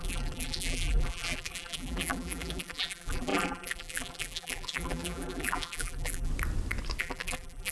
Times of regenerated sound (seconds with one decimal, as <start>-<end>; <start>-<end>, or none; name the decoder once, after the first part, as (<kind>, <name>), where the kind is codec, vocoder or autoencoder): 0.0-6.3 (vocoder, BigVGAN v2); 7.0-7.7